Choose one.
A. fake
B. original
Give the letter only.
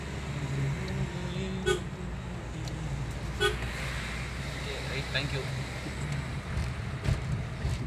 B